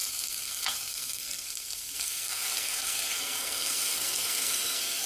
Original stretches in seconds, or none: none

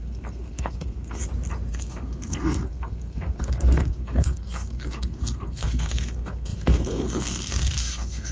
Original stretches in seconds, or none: 1.2-1.7

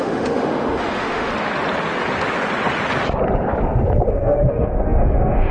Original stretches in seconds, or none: 1.3-4.1

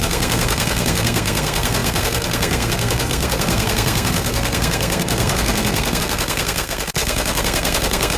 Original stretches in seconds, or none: none

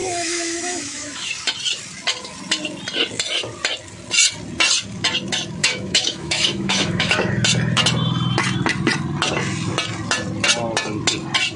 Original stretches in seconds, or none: 1.3-5.6; 7.3-11.6

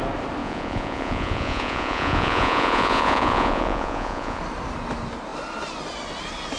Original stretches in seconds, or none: 0.0-0.4; 4.4-6.6

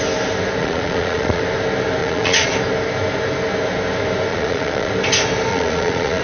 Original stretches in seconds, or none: 0.0-0.6; 1.4-2.0; 2.5-4.3; 4.9-5.5